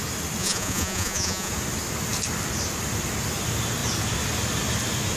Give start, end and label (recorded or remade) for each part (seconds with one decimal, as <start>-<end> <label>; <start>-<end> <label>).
0.0-0.4 recorded; 0.4-1.5 remade; 1.5-5.2 recorded